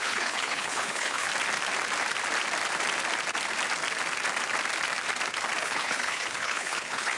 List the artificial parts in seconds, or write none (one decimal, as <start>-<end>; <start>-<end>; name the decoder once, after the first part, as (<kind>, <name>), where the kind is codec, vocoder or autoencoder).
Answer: 0.0-1.3 (codec, HILCodec); 5.6-7.2